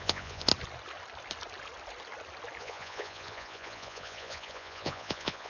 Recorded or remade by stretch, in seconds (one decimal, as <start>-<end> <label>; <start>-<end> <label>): 0.0-0.5 remade; 0.5-2.6 recorded; 2.6-5.5 remade